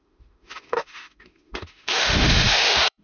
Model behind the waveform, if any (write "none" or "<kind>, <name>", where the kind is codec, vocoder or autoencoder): autoencoder, DAC-VAE